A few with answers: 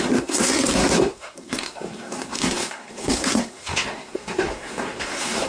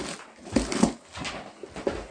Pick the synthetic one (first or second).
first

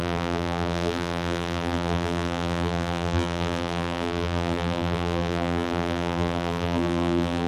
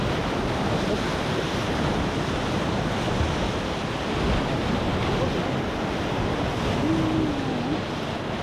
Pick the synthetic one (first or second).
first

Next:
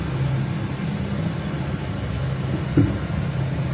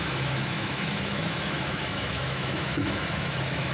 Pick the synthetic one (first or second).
second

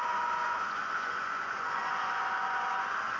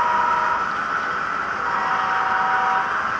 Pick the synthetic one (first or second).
first